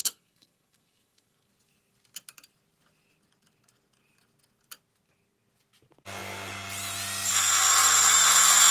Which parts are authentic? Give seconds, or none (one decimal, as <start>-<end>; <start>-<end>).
1.5-8.7